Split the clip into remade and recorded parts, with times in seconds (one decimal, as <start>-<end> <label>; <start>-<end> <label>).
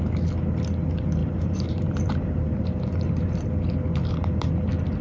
0.0-1.2 recorded; 1.2-3.5 remade; 3.5-4.0 recorded; 4.0-4.5 remade; 4.5-5.0 recorded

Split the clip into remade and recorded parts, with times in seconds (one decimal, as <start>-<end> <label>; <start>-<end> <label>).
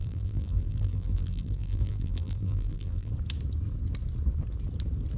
0.0-3.1 remade; 3.1-5.2 recorded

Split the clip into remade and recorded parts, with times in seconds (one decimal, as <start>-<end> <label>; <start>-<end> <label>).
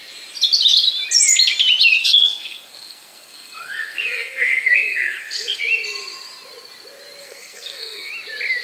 0.0-2.0 recorded; 2.0-5.6 remade; 5.6-7.2 recorded; 7.2-8.1 remade; 8.1-8.6 recorded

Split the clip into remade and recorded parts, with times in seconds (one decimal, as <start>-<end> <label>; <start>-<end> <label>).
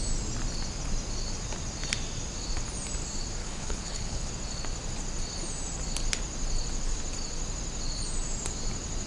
0.0-3.4 recorded; 3.4-4.3 remade; 4.3-9.1 recorded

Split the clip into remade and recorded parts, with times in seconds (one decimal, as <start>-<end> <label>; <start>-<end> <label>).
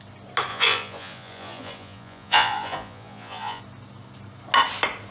0.0-0.5 recorded; 0.5-3.6 remade; 3.6-5.1 recorded